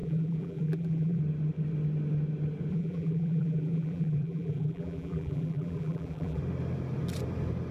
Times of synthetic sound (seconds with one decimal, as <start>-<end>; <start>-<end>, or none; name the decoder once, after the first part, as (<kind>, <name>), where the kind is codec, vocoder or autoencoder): 0.0-1.2 (vocoder, BigVGAN v2); 2.7-6.4